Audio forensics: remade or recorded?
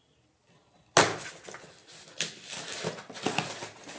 recorded